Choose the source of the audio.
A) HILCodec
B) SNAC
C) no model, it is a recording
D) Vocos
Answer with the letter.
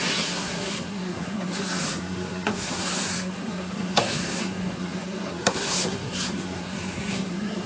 B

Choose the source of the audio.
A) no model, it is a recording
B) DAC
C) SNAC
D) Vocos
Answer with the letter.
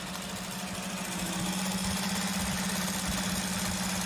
A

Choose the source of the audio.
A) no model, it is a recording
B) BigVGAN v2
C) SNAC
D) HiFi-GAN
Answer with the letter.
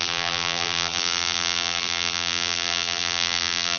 B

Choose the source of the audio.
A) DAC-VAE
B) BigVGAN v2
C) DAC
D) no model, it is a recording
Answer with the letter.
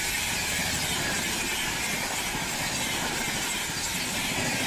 D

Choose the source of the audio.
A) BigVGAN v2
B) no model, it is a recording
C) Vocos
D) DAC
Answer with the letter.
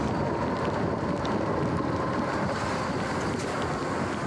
B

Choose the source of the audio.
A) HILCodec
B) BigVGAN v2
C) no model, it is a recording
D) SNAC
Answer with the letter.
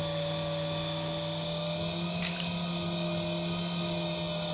C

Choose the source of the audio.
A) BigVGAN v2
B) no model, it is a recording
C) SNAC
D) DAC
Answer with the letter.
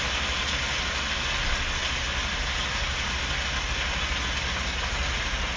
B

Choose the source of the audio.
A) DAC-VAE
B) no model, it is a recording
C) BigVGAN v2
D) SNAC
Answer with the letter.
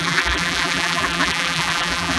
C